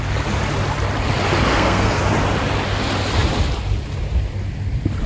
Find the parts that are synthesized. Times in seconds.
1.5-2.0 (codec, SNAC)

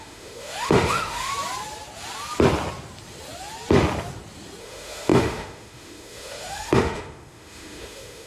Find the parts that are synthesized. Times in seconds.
0.0-1.3 (autoencoder, DAC-VAE); 4.6-8.3

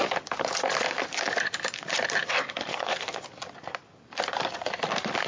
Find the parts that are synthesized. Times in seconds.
2.7-3.2 (codec, SNAC)

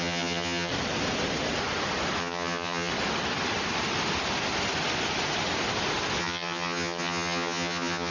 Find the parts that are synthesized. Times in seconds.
0.0-0.7 (vocoder, HiFi-GAN); 2.2-2.9; 6.2-8.1

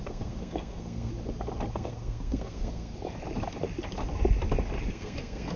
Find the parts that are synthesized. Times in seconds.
0.0-1.1 (codec, SNAC); 1.7-2.9; 4.9-5.6

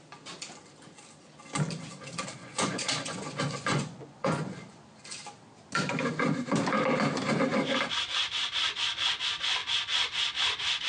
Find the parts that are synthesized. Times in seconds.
2.4-4.8 (vocoder, Vocos)

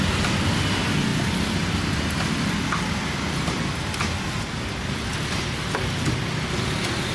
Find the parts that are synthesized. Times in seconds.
none

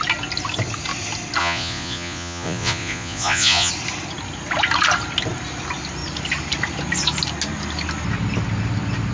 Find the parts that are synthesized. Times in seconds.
1.4-3.7 (vocoder, Vocos)